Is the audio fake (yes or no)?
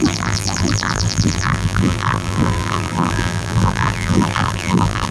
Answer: yes